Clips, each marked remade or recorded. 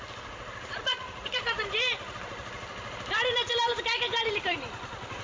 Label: remade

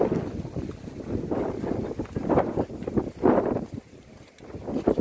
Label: recorded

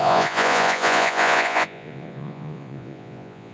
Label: remade